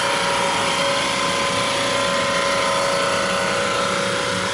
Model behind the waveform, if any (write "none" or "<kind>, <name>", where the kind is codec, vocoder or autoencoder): none